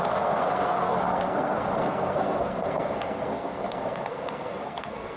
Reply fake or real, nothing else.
fake